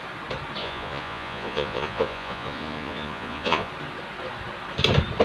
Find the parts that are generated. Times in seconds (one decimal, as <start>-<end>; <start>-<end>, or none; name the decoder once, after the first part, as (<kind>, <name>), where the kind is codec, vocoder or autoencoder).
0.6-3.7 (vocoder, Vocos)